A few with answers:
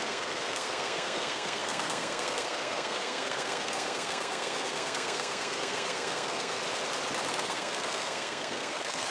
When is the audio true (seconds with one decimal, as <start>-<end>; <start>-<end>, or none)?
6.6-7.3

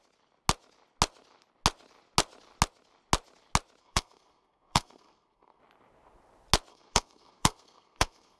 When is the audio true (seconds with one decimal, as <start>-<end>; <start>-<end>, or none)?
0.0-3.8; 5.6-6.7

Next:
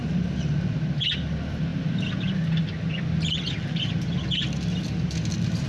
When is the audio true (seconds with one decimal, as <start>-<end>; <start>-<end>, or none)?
0.0-5.7

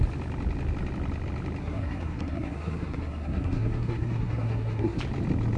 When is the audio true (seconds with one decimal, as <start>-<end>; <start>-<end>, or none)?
0.0-1.6; 5.0-5.6

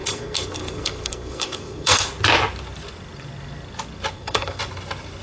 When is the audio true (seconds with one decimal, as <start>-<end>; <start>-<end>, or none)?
2.1-4.1; 4.6-5.2